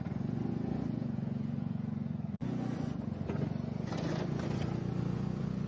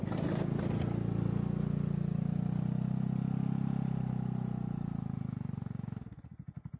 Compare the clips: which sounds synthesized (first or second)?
first